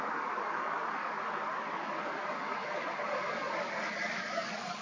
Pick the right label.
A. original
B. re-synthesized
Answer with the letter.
B